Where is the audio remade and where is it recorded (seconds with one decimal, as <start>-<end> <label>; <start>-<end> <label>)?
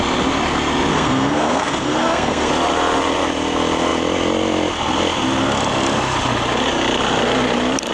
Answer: 0.0-0.9 recorded; 0.9-2.5 remade; 2.5-7.9 recorded